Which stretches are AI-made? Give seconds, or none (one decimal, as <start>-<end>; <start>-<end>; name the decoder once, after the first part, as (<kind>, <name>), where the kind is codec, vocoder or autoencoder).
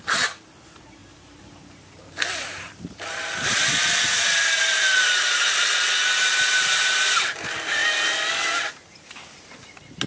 1.0-5.8 (vocoder, BigVGAN v2)